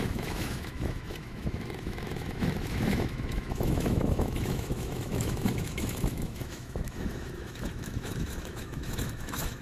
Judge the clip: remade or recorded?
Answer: remade